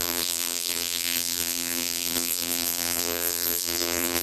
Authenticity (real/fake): fake